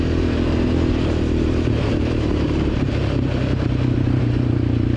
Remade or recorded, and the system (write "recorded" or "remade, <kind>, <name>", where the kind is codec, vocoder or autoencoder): remade, vocoder, BigVGAN v2